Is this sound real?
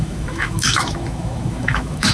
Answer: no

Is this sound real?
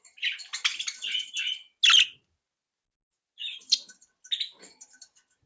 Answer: yes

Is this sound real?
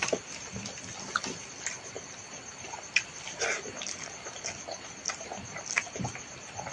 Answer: yes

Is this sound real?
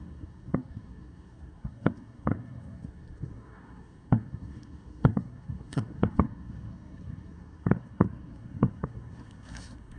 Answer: no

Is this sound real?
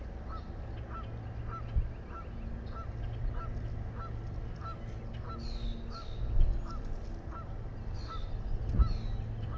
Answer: yes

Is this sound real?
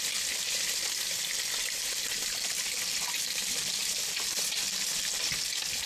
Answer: no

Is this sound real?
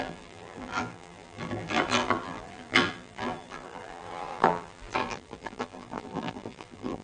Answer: no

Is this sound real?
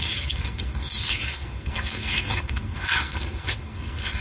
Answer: no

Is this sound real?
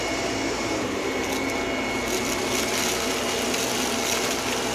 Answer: yes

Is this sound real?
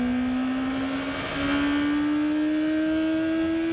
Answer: yes